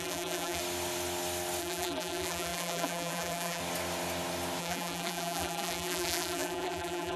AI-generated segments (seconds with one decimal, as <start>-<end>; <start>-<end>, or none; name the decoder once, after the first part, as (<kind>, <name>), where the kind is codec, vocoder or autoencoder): 0.0-0.6 (vocoder, BigVGAN v2); 1.6-3.6; 4.6-7.2